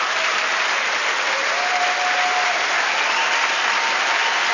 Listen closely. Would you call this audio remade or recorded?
recorded